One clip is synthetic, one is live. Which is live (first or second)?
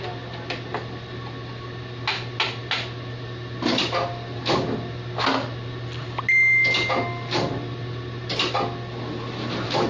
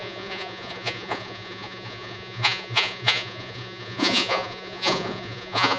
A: first